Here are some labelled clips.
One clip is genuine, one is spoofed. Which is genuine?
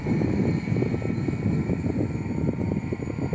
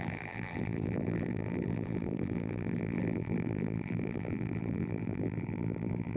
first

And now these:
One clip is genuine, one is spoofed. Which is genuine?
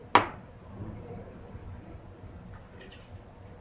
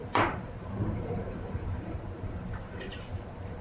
first